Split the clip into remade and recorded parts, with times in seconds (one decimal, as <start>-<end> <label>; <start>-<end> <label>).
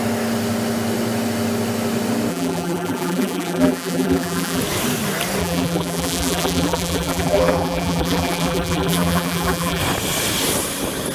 0.0-2.3 recorded; 2.3-4.6 remade; 4.6-5.4 recorded; 5.4-9.8 remade; 9.8-11.1 recorded